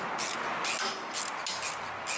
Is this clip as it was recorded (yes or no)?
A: yes